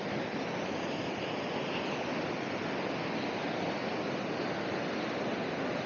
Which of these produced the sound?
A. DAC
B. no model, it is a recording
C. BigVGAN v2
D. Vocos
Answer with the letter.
B